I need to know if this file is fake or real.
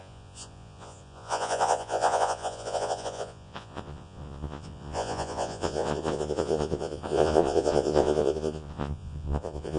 fake